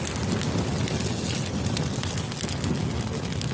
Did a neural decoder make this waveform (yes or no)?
no